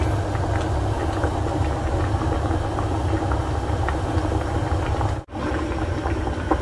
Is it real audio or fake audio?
real